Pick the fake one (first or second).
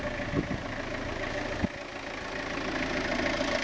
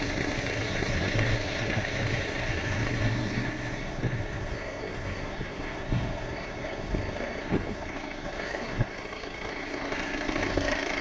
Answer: second